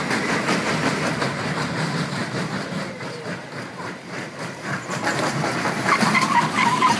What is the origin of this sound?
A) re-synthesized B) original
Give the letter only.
A